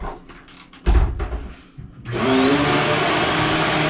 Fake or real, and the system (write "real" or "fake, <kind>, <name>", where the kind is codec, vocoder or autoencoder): real